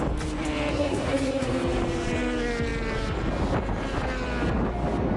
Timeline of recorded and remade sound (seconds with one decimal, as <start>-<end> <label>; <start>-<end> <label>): 0.0-0.7 recorded; 0.7-1.5 remade; 1.5-5.2 recorded